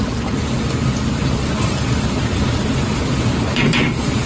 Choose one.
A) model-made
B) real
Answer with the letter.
B